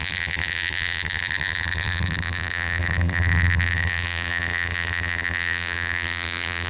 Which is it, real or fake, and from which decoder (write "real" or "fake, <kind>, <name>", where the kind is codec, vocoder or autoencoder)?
fake, vocoder, BigVGAN v2